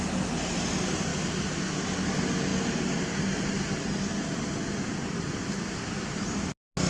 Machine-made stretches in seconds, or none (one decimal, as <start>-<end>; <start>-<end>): none